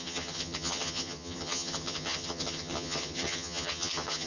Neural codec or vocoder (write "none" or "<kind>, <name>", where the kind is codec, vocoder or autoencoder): vocoder, HiFi-GAN